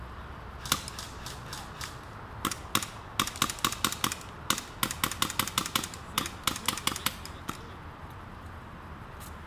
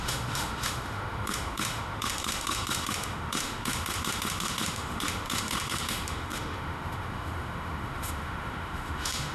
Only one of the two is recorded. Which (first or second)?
first